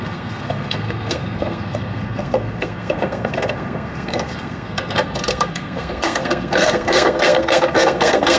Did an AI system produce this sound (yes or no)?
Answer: yes